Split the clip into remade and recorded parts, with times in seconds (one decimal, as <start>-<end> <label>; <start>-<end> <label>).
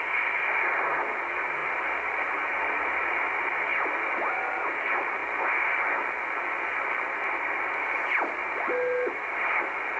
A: 0.0-10.0 recorded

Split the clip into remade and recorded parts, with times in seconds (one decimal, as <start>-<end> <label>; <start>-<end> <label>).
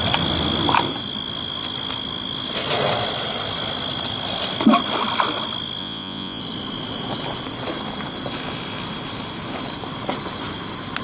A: 0.0-5.8 recorded; 5.8-6.4 remade; 6.4-11.0 recorded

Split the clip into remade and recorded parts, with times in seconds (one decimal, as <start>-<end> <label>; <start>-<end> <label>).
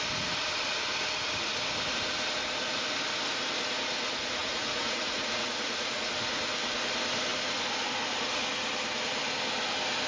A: 0.0-4.4 recorded; 4.4-6.1 remade; 6.1-10.1 recorded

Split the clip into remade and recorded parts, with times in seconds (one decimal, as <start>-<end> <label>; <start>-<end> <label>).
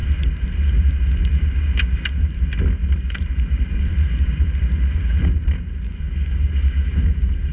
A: 0.0-1.5 remade; 1.5-2.8 recorded; 2.8-6.0 remade; 6.0-7.5 recorded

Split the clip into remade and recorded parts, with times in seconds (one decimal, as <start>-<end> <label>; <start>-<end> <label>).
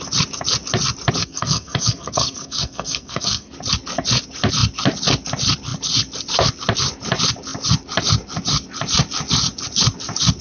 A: 0.0-1.2 recorded; 1.2-3.5 remade; 3.5-10.4 recorded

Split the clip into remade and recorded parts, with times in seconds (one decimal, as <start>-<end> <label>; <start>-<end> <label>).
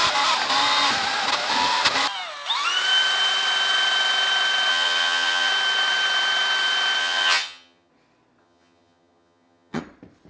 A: 0.0-4.7 recorded; 4.7-5.5 remade; 5.5-7.0 recorded; 7.0-7.9 remade; 7.9-8.4 recorded; 8.4-9.8 remade; 9.8-10.3 recorded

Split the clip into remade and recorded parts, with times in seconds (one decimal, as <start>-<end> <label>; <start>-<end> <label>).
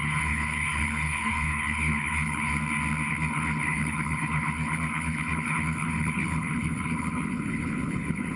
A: 0.0-2.5 remade; 2.5-3.1 recorded; 3.1-8.4 remade